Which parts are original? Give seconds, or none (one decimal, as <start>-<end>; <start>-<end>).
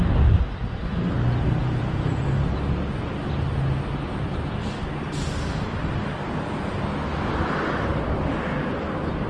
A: 0.0-1.6; 2.2-9.3